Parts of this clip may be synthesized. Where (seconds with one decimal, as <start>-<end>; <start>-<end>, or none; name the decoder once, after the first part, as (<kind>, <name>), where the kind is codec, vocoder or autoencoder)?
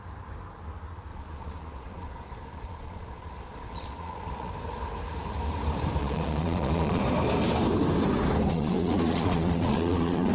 1.1-4.5 (vocoder, Vocos); 6.0-7.0; 8.5-10.3